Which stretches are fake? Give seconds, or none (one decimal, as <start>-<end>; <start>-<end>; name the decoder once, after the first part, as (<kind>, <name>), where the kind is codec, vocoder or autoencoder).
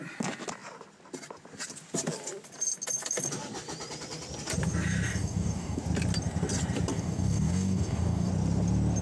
5.1-5.8 (codec, DAC); 6.9-8.3